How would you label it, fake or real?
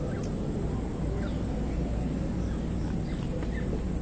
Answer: real